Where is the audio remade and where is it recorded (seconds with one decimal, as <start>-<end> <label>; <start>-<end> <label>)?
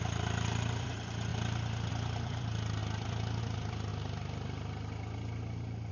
0.0-3.9 remade; 3.9-5.9 recorded